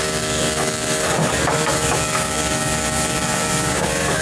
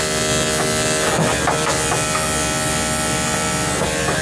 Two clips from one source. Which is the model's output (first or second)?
first